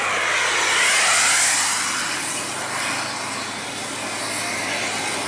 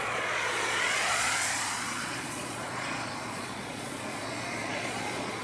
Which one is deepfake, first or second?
second